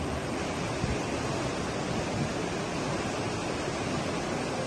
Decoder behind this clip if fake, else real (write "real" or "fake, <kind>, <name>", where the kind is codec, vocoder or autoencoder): real